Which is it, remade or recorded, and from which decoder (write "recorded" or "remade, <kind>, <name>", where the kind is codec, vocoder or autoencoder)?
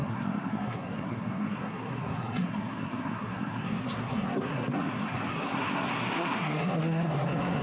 remade, codec, SNAC